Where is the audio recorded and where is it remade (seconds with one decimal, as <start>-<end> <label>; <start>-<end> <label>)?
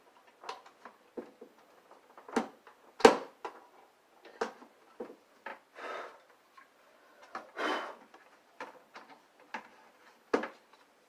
0.0-11.1 recorded